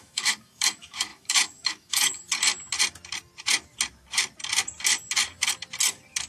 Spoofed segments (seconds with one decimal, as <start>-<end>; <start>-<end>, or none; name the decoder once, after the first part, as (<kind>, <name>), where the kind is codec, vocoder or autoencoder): 0.0-2.2 (autoencoder, DAC-VAE)